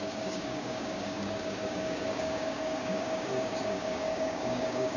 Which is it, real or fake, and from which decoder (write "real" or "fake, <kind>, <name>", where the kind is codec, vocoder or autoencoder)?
fake, codec, DAC